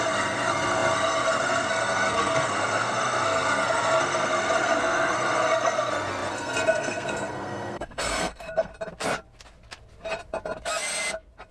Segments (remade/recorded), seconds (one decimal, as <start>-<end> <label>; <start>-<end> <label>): 0.0-8.7 remade; 8.7-11.5 recorded